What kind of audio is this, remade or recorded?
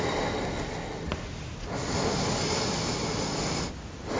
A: recorded